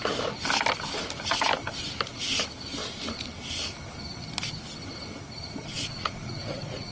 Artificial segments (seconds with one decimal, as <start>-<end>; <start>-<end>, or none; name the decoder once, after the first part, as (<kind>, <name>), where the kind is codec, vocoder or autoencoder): 5.7-6.9 (vocoder, Vocos)